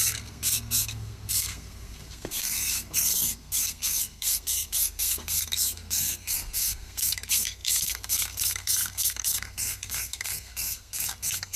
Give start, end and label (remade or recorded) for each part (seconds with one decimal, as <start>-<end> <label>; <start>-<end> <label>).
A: 0.0-11.6 remade